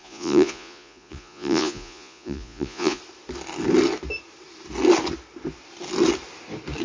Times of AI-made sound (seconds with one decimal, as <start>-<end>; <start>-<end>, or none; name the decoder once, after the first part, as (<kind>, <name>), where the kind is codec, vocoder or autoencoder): 0.0-3.0 (vocoder, Vocos)